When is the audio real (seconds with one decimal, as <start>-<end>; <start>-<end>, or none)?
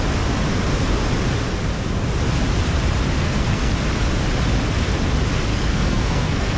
0.0-3.2; 3.7-5.5